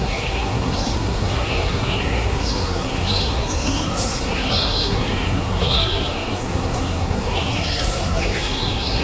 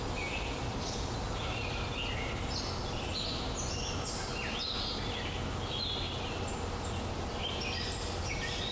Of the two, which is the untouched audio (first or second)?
second